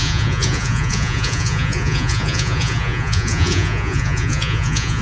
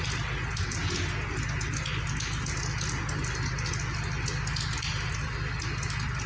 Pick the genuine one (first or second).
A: second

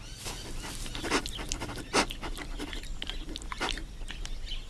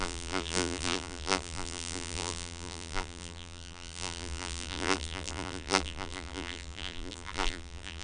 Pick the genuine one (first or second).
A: first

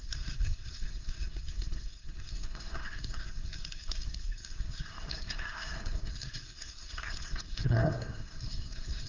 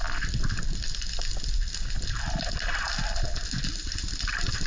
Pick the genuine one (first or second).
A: second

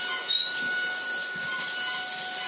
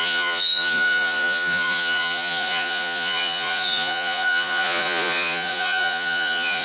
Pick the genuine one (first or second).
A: first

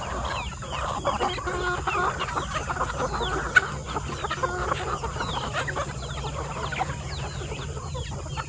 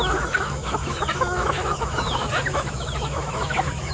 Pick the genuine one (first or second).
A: first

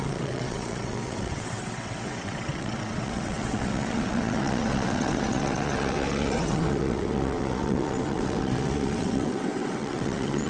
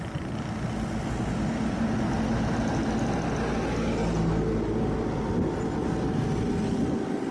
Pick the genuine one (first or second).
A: second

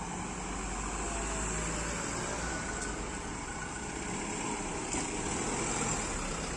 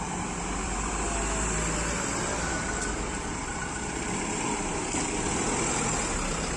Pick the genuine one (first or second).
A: first